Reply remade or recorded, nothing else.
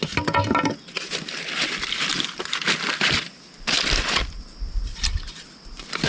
recorded